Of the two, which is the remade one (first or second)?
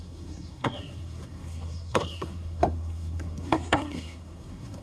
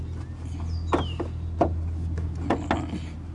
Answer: first